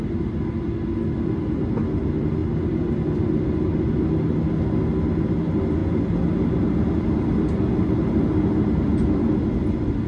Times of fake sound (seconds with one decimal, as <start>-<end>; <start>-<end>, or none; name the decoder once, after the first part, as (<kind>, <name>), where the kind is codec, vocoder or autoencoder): none